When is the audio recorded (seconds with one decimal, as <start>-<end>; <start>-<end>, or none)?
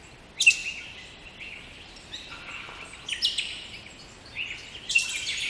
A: 0.0-5.5